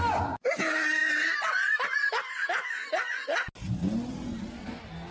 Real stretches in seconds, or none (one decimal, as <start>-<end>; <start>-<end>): 0.0-5.1

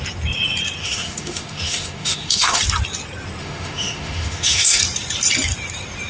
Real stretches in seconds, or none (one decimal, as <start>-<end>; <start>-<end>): 0.0-0.8; 2.6-3.4; 4.8-6.1

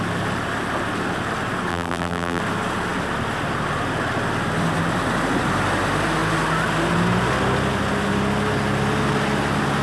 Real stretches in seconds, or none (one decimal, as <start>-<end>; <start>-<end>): 0.0-1.7; 2.4-9.8

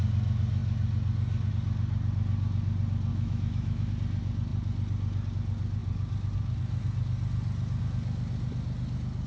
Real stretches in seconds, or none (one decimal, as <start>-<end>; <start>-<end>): 0.0-3.1; 3.9-9.3

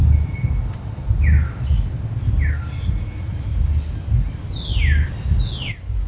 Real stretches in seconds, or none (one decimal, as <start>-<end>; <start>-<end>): 0.0-6.1

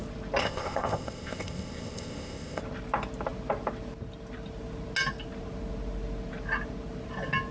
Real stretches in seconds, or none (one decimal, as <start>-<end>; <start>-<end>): 0.0-0.4; 2.6-7.5